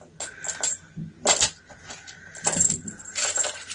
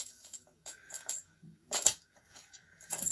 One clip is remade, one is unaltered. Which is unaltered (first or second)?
first